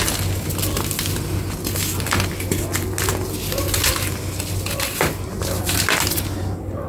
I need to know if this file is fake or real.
real